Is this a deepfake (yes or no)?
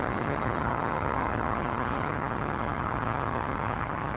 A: yes